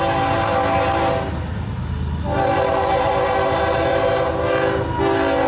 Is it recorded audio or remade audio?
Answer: recorded